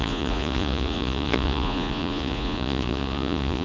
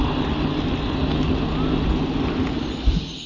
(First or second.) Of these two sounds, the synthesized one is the first